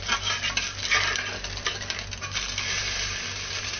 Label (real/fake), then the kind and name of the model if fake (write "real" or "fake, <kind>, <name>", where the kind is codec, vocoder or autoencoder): real